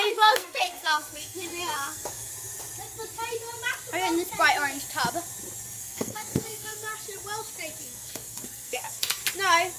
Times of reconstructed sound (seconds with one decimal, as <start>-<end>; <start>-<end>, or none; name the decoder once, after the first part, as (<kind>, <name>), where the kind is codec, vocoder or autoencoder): 0.0-2.3 (codec, SNAC); 5.8-6.9; 7.8-9.2